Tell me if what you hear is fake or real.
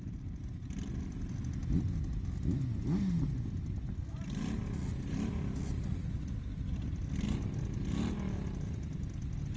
real